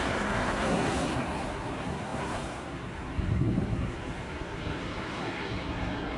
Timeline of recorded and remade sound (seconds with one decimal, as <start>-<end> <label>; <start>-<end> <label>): 0.0-6.2 remade